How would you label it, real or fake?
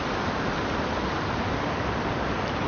real